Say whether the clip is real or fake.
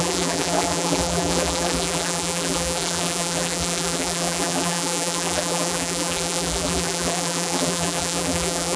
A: fake